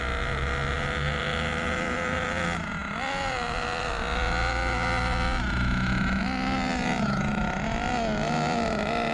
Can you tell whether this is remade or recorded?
recorded